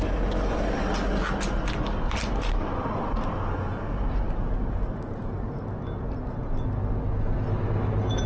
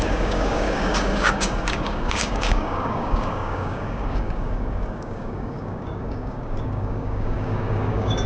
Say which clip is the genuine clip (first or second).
first